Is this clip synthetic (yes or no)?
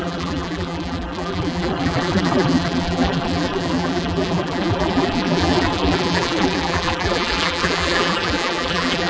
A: yes